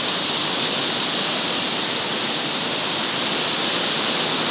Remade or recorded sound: recorded